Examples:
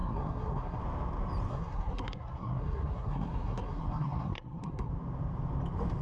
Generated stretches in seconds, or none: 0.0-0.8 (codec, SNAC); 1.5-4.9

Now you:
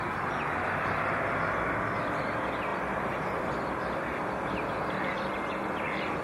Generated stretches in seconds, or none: 2.7-3.2 (vocoder, BigVGAN v2)

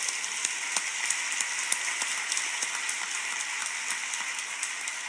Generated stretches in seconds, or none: none

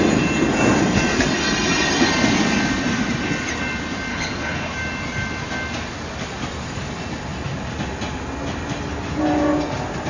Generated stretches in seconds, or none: 4.1-4.7 (codec, HILCodec)

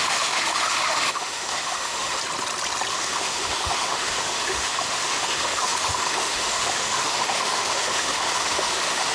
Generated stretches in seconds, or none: 0.0-2.2 (autoencoder, DAC-VAE); 2.9-9.1

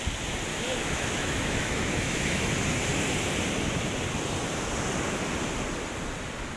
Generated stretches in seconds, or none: 0.5-2.5 (autoencoder, DAC-VAE)